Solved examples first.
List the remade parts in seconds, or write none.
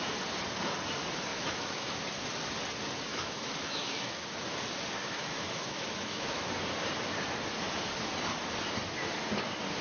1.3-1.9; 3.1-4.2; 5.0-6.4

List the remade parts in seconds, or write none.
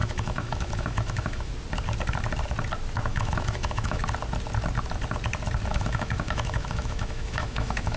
0.0-1.5; 3.1-4.0; 5.7-8.0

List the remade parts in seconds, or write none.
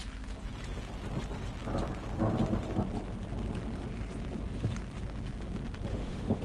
5.9-6.4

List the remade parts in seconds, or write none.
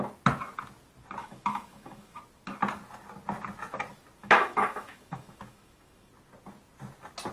1.2-2.2; 4.2-6.1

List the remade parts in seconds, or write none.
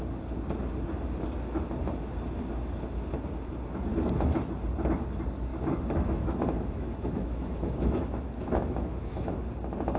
5.5-9.3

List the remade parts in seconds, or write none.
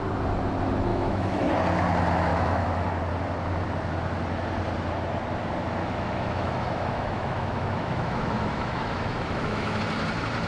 0.9-1.5; 2.3-2.9; 5.8-9.8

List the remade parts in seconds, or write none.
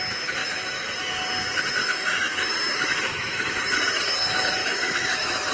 0.4-1.1; 1.8-3.6; 4.6-5.5